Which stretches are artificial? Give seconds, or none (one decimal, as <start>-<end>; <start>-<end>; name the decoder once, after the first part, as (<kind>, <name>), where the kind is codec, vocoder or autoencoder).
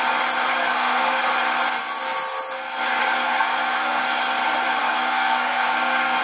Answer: 0.5-1.2 (codec, SNAC); 3.0-4.0; 4.8-6.2